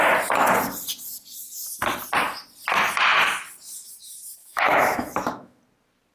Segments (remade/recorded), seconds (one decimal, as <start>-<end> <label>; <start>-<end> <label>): 0.0-4.4 recorded; 4.4-5.6 remade; 5.6-6.1 recorded